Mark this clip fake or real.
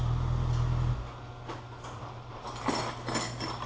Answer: real